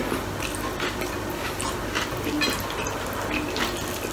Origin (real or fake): real